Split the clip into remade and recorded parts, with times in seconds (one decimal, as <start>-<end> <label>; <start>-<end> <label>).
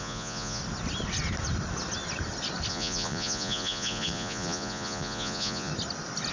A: 0.0-0.6 remade; 0.6-2.7 recorded; 2.7-5.7 remade; 5.7-6.3 recorded